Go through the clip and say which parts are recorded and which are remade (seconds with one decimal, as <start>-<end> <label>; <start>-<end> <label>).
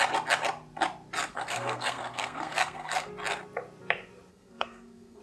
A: 0.0-1.3 recorded; 1.3-3.1 remade; 3.1-4.3 recorded; 4.3-5.2 remade